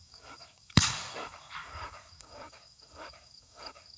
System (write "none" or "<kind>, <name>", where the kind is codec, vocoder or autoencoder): codec, DAC